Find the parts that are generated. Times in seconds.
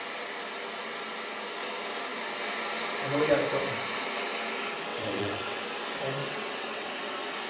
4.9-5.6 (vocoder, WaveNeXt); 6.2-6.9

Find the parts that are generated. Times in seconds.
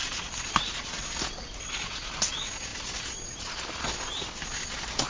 none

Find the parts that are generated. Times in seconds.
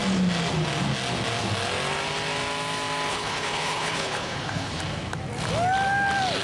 3.1-4.8 (codec, HILCodec)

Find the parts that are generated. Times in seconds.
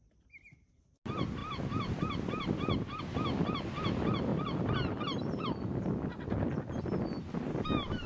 1.4-3.0 (vocoder, BigVGAN v2)